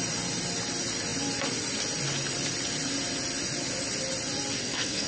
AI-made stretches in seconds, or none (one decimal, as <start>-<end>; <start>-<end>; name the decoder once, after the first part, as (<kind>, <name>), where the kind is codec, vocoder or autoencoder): 4.6-5.1 (codec, SNAC)